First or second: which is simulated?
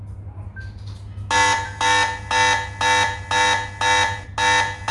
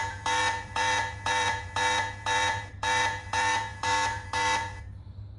second